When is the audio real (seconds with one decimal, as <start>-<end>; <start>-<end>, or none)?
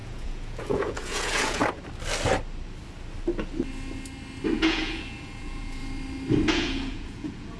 1.6-4.5; 5.8-6.5